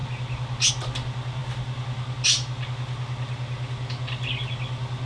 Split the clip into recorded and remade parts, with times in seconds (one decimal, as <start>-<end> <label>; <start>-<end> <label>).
0.0-5.1 recorded